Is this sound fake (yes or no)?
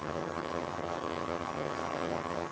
yes